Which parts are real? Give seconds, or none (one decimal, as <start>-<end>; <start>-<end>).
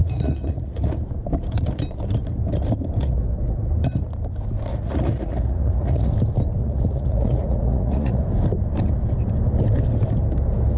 1.0-4.7; 6.1-6.6; 8.2-10.8